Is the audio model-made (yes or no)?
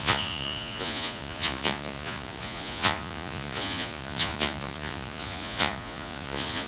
yes